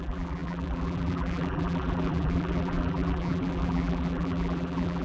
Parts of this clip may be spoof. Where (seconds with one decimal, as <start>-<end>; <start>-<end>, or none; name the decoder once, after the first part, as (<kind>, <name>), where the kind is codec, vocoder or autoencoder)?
0.0-5.0 (vocoder, BigVGAN v2)